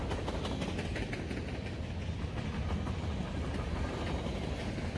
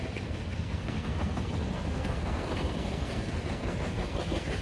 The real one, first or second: first